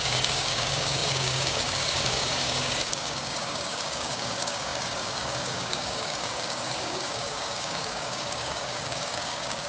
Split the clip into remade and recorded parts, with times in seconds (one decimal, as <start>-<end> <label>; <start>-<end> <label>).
0.0-9.7 remade